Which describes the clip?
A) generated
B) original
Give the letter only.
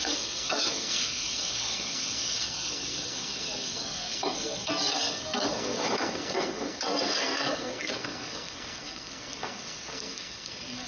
A